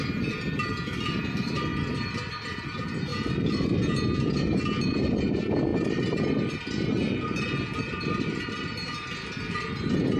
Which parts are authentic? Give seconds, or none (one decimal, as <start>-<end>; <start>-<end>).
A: none